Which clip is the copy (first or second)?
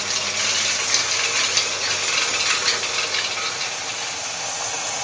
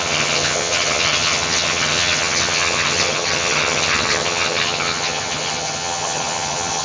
second